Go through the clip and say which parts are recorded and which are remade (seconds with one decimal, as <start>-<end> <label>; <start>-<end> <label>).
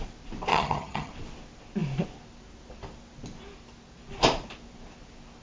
0.0-0.5 recorded; 0.5-1.1 remade; 1.1-5.4 recorded